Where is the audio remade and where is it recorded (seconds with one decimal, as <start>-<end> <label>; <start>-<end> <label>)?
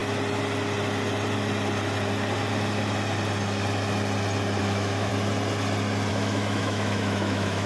0.0-4.6 recorded; 4.6-5.1 remade; 5.1-6.1 recorded; 6.1-7.7 remade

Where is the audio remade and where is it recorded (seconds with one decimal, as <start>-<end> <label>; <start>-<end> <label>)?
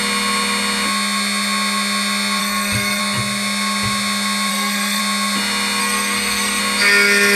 0.0-2.4 recorded; 2.4-3.0 remade; 3.0-4.5 recorded; 4.5-5.0 remade; 5.0-5.8 recorded; 5.8-6.6 remade; 6.6-7.4 recorded